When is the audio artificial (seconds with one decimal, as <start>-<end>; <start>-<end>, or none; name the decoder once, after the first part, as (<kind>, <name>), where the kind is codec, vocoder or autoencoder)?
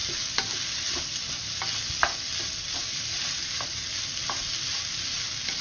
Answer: none